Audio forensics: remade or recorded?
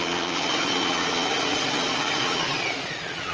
remade